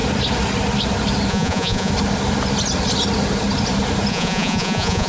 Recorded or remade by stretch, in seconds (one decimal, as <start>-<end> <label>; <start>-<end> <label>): 0.0-1.3 recorded; 1.3-1.9 remade; 1.9-4.1 recorded; 4.1-5.1 remade